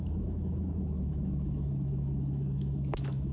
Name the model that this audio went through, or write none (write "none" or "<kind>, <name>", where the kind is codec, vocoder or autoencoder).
autoencoder, DAC-VAE